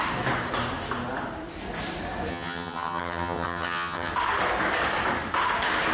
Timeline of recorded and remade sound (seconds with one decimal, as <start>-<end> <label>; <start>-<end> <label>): 0.0-2.3 recorded; 2.3-4.1 remade; 4.1-5.9 recorded